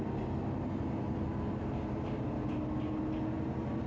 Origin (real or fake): real